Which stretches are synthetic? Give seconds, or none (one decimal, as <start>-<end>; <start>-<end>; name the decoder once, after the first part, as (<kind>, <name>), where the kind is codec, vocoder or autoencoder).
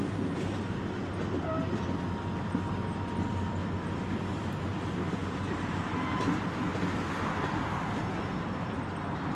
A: none